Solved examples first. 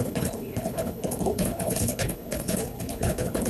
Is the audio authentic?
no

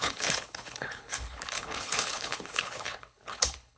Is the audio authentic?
no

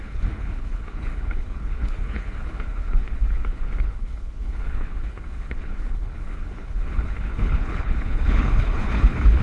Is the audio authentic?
no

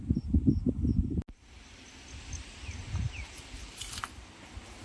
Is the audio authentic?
yes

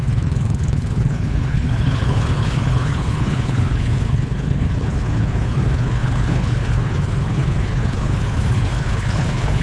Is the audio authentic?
no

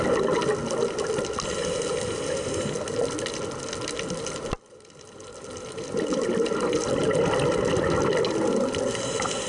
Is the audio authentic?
yes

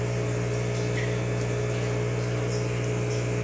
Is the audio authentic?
yes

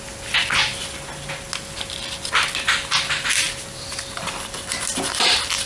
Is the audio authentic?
yes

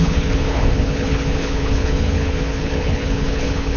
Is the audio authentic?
no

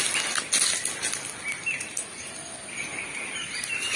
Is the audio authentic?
yes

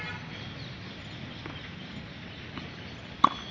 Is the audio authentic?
yes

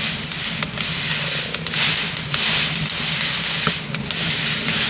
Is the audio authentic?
yes